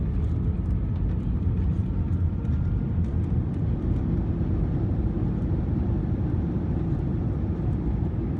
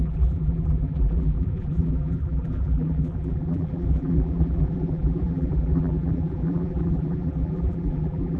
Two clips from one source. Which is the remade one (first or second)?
second